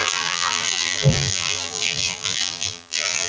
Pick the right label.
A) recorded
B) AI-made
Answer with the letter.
B